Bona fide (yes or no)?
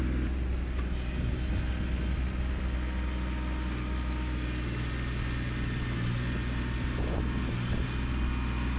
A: yes